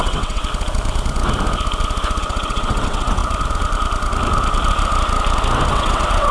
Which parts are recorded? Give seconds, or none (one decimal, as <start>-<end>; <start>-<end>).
0.4-2.2; 3.2-5.7

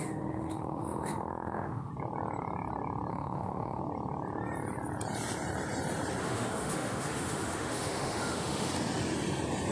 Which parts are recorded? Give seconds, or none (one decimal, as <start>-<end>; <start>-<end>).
1.9-3.1; 3.8-6.2; 8.7-9.7

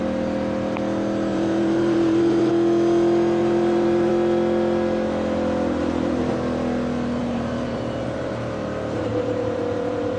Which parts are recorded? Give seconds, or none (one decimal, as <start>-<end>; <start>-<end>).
0.0-1.3; 2.5-3.4; 4.1-7.2

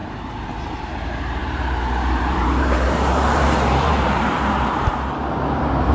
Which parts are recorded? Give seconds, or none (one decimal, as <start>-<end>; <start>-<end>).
none

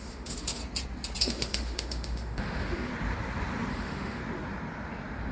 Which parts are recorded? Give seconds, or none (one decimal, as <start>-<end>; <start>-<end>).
0.6-1.2; 2.9-3.7; 4.2-5.3